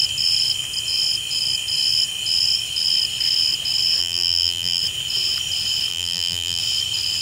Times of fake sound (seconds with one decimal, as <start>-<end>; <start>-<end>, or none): 4.0-4.8; 5.9-6.6